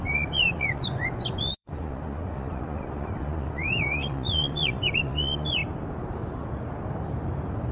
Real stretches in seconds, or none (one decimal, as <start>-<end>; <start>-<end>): 5.6-7.7